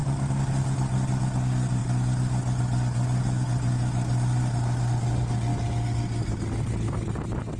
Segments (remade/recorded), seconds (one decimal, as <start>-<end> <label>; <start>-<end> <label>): 0.0-7.6 recorded

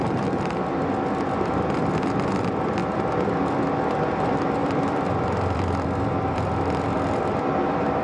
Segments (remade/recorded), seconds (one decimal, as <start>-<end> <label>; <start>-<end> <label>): 0.0-8.0 remade

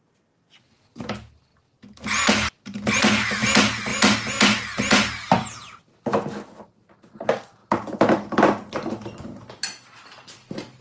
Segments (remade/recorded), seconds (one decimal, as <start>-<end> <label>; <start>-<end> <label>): 0.0-10.8 recorded

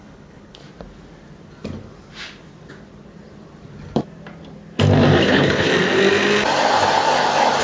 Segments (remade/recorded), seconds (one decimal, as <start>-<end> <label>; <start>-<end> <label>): 0.0-0.6 remade; 0.6-5.2 recorded; 5.2-5.7 remade; 5.7-7.6 recorded